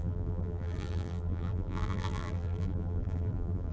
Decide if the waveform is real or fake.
fake